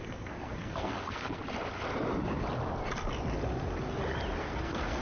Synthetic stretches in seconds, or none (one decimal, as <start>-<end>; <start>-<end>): 0.0-1.4; 4.4-5.0